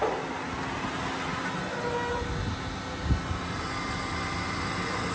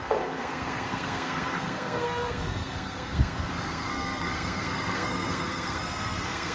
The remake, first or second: second